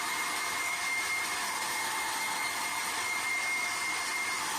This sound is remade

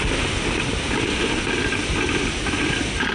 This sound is recorded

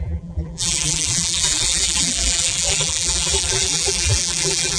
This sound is remade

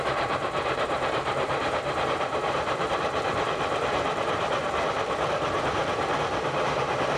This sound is remade